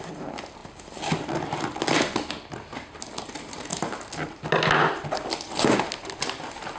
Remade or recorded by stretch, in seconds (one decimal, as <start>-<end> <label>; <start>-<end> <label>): 0.0-6.8 recorded